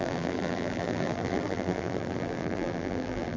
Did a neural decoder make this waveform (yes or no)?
yes